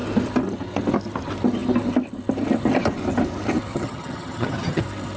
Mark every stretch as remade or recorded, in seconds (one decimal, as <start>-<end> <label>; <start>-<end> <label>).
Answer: 0.0-3.7 recorded; 3.7-4.8 remade; 4.8-5.2 recorded